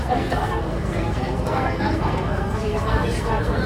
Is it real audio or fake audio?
fake